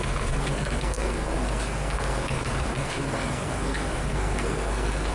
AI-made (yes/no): yes